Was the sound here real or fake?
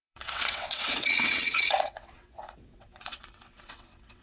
fake